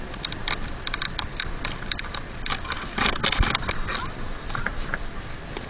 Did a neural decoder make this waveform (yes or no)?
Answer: no